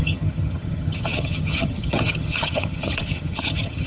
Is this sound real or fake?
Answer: fake